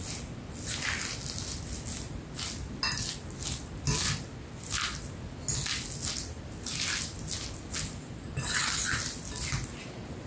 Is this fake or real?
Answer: real